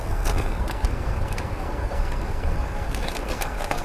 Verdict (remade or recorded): remade